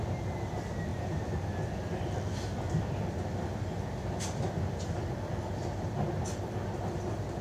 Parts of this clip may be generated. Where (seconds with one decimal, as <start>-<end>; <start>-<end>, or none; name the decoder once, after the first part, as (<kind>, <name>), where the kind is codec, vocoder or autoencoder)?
none